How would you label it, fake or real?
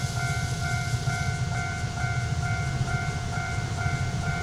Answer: fake